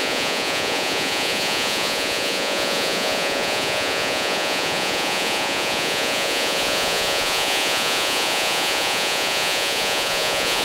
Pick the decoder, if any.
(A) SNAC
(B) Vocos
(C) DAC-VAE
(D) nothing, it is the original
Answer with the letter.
B